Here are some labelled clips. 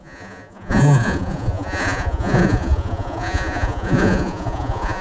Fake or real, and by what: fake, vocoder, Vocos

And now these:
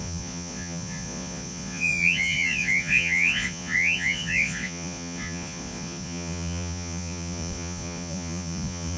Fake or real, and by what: fake, vocoder, Vocos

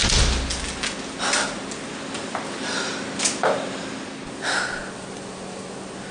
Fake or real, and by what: real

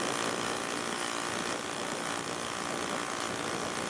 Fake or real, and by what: real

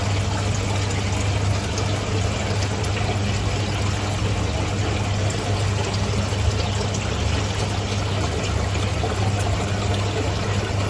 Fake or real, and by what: real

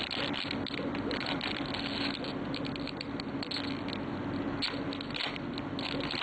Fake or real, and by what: real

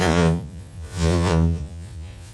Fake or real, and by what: fake, vocoder, Vocos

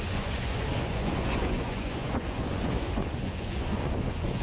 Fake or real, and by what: fake, vocoder, Vocos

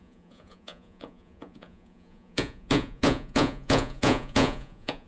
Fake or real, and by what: fake, vocoder, Vocos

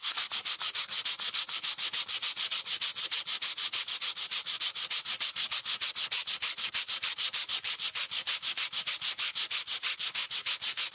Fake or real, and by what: real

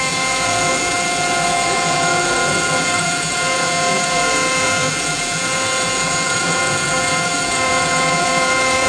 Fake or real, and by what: fake, vocoder, Vocos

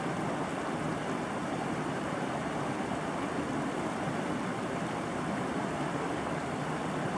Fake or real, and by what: real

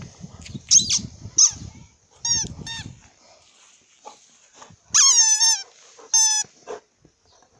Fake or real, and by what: real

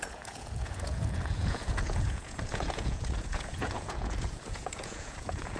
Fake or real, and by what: fake, vocoder, Vocos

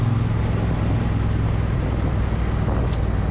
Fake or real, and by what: real